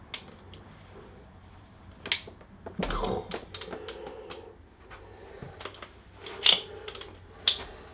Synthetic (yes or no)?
no